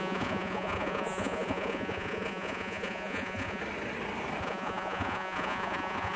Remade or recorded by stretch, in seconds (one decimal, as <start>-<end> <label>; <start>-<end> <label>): 0.0-3.6 remade; 3.6-4.4 recorded; 4.4-6.2 remade